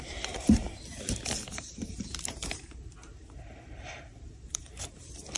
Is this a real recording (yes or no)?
no